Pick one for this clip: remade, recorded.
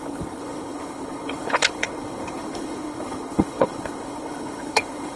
remade